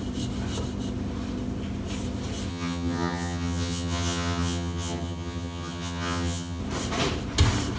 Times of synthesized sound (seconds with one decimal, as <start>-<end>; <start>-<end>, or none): 2.5-6.6